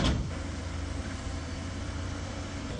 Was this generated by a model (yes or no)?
yes